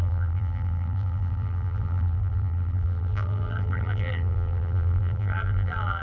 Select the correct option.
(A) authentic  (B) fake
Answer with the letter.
B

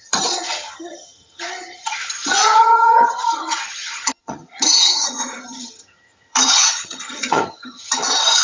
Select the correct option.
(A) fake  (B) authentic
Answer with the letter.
A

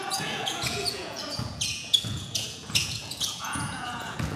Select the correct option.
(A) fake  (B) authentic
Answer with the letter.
A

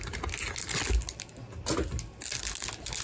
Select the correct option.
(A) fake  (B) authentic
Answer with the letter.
B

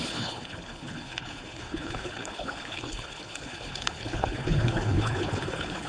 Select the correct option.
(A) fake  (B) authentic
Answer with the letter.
A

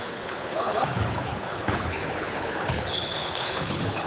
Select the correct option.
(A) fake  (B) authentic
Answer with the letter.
A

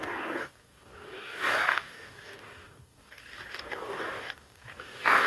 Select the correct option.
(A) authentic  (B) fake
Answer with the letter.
B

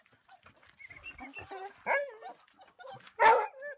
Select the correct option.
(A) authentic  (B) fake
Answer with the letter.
A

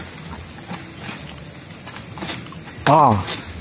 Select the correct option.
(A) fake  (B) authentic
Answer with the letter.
B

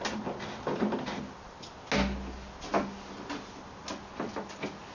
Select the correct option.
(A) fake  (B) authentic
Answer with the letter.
B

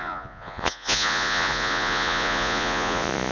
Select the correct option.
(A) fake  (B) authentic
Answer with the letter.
A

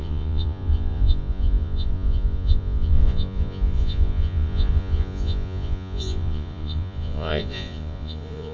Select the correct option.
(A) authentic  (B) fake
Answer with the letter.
B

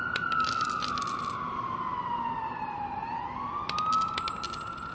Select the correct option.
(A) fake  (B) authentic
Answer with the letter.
B